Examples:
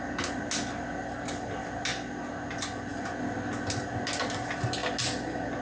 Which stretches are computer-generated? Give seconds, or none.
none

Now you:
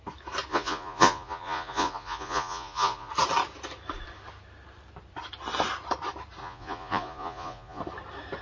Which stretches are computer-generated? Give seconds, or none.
0.5-3.1 (vocoder, Vocos); 6.4-7.8

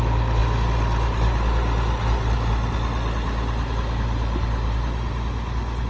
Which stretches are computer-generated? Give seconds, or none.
none